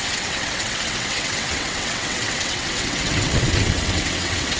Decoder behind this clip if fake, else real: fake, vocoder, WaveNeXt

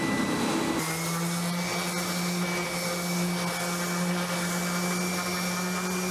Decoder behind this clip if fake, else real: real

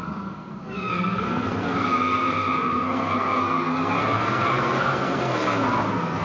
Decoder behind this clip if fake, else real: fake, codec, SNAC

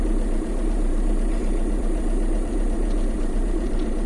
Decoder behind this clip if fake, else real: fake, vocoder, BigVGAN v2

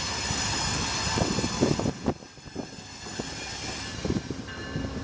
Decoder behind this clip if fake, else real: real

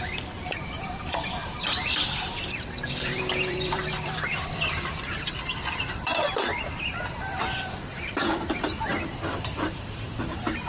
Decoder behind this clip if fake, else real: fake, vocoder, BigVGAN v2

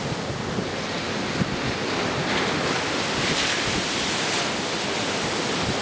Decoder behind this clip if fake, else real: real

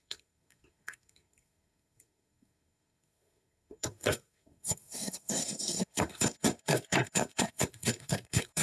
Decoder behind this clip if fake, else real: fake, codec, SNAC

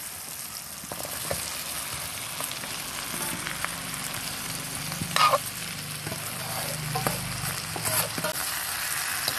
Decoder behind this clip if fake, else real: real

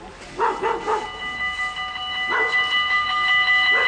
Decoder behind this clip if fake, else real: real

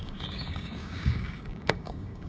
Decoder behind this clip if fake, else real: fake, codec, DAC